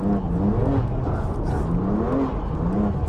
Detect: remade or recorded recorded